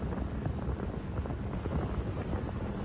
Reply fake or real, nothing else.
real